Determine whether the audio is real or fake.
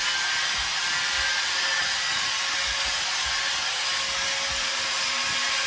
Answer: real